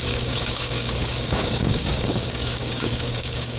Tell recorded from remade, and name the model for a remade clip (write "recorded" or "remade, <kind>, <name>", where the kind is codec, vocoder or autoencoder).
remade, codec, DAC